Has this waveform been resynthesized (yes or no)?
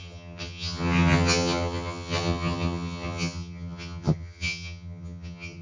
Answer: yes